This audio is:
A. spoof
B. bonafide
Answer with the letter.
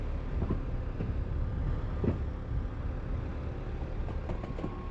B